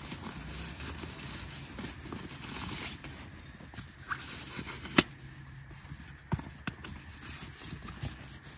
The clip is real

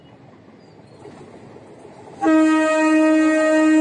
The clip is real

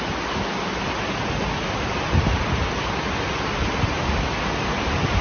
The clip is real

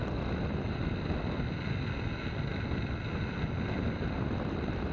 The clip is real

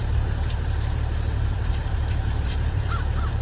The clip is fake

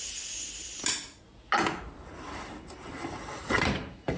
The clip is real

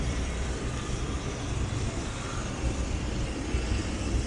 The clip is fake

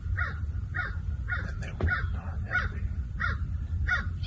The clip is real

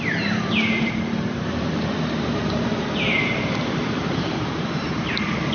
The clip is fake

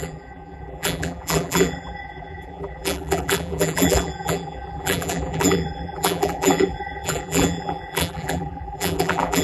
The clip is fake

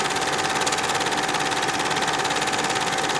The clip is real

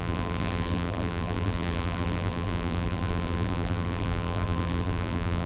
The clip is fake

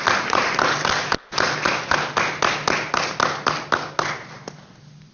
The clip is real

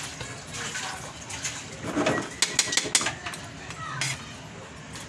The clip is real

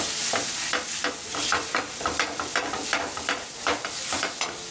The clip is real